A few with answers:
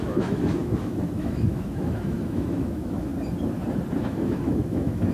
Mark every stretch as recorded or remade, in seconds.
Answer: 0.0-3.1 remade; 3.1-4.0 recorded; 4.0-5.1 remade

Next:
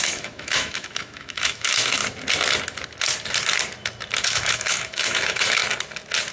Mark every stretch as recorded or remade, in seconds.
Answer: 0.0-2.0 remade; 2.0-4.2 recorded; 4.2-5.6 remade; 5.6-6.3 recorded

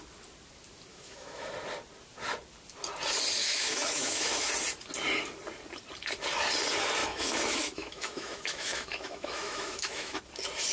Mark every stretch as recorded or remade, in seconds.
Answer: 0.0-0.9 recorded; 0.9-1.5 remade; 1.5-3.4 recorded; 3.4-4.5 remade; 4.5-7.0 recorded; 7.0-10.2 remade; 10.2-10.7 recorded